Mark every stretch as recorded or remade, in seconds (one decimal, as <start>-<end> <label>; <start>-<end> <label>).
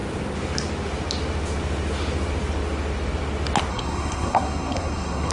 0.0-3.7 recorded; 3.7-5.3 remade